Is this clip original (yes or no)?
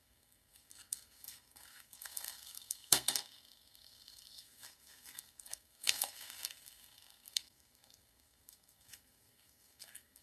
no